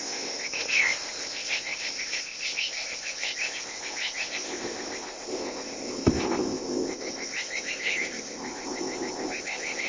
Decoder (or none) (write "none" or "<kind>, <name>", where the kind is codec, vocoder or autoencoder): codec, ZipCodec